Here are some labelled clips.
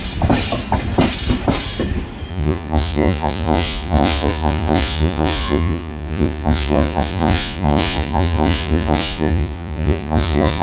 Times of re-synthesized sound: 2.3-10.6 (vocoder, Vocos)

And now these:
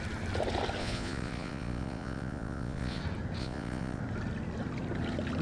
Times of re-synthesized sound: 0.8-3.0 (vocoder, Vocos); 3.4-4.0

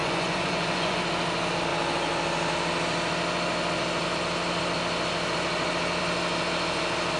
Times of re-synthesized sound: 0.0-1.0 (vocoder, Vocos)

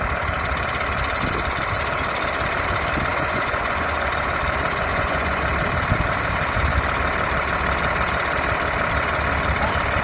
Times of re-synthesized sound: 3.1-4.1 (vocoder, Vocos); 4.9-5.4

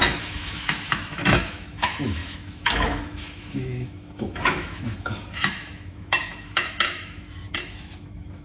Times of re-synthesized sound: 0.0-8.4 (autoencoder, DAC-VAE)

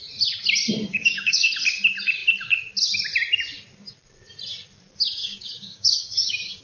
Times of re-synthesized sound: 0.9-1.5 (codec, DAC); 5.2-6.6